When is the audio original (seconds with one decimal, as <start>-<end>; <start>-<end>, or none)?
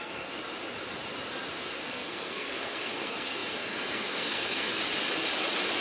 0.4-1.8; 4.8-5.8